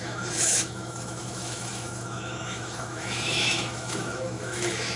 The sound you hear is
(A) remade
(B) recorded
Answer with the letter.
A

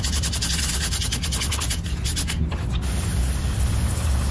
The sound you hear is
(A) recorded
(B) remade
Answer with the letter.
A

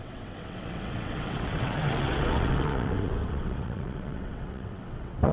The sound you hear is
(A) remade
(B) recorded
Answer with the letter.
A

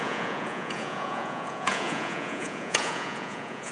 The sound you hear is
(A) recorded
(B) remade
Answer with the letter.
B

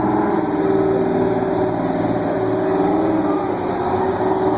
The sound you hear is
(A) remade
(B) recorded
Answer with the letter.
B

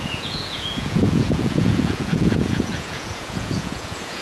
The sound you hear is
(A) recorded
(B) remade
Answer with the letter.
B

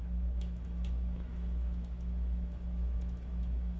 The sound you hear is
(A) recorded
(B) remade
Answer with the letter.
B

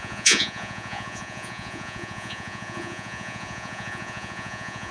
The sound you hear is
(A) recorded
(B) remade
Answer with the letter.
B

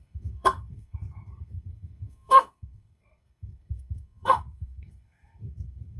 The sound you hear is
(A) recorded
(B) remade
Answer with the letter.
B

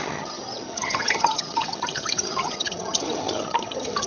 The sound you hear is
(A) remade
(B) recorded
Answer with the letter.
A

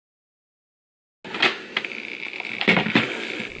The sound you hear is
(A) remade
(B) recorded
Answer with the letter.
B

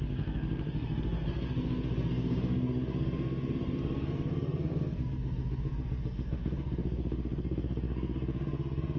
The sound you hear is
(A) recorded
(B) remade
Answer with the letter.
B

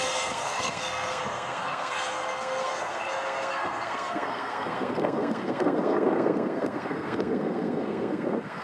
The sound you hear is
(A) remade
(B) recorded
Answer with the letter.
A